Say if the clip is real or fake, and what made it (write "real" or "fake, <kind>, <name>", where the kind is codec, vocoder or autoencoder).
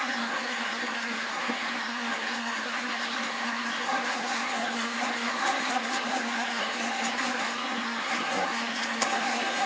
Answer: fake, codec, SNAC